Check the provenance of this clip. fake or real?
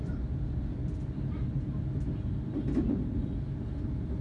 real